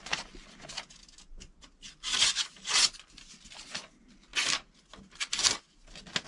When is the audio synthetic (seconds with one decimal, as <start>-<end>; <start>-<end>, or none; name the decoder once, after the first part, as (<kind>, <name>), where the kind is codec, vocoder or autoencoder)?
none